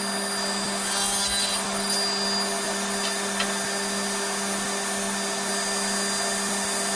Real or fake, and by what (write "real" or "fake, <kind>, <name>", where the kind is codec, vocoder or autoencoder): real